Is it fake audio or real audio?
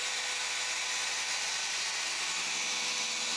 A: real